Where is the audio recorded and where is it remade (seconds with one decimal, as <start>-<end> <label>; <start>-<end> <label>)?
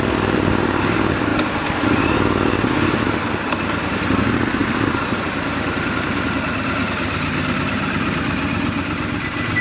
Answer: 0.0-9.6 recorded